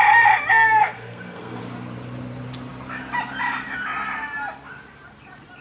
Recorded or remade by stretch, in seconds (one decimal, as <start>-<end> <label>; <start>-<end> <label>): 0.0-0.8 recorded; 0.8-1.6 remade; 1.6-5.6 recorded